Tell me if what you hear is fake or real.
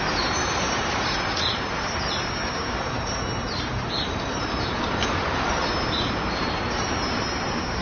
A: fake